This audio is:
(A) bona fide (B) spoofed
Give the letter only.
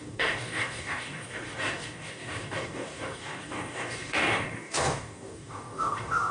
B